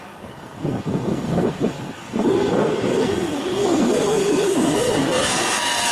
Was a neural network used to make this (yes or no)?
yes